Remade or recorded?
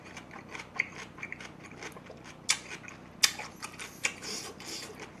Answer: recorded